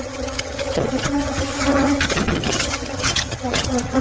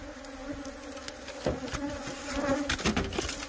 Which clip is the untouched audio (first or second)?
second